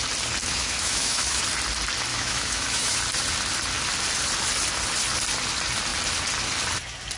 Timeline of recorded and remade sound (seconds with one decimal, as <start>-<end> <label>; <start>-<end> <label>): 0.0-0.4 recorded; 0.4-1.4 remade; 1.4-2.1 recorded; 2.1-3.0 remade; 3.0-7.2 recorded